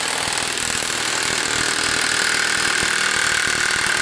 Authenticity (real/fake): real